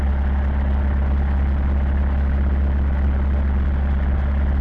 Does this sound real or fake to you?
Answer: real